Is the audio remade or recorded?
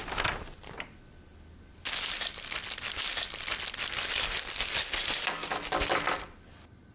recorded